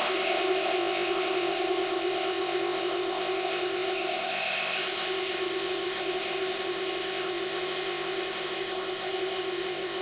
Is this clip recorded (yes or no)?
no